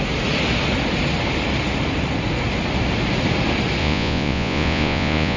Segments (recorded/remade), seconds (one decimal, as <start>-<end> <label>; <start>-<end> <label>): 0.0-3.8 recorded; 3.8-5.4 remade